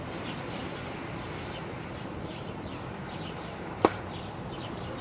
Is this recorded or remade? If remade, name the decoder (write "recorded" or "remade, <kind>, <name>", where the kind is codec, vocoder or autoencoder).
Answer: recorded